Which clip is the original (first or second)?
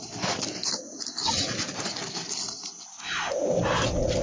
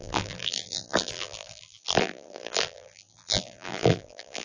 first